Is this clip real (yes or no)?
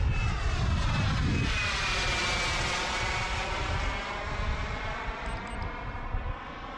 yes